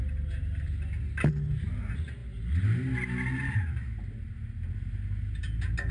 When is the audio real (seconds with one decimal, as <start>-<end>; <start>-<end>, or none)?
0.0-5.9